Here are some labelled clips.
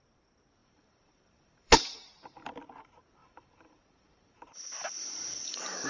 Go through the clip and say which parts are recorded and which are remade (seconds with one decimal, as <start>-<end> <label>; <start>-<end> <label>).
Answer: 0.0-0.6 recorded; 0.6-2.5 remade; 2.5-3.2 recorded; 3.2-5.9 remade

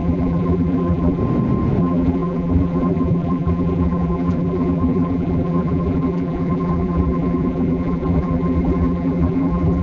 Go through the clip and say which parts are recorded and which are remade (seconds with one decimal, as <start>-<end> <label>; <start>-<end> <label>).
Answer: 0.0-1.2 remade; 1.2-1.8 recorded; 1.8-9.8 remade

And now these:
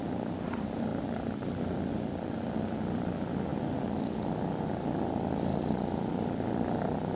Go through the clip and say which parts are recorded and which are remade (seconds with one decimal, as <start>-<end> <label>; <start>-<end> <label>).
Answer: 0.0-7.2 recorded

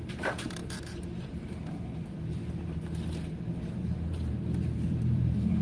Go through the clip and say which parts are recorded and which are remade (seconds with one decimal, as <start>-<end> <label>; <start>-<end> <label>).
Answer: 0.0-2.4 remade; 2.4-3.7 recorded; 3.7-5.6 remade

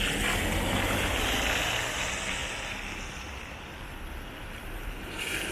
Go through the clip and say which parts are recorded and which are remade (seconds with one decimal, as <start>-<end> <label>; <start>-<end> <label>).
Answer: 0.0-0.4 recorded; 0.4-1.7 remade; 1.7-5.5 recorded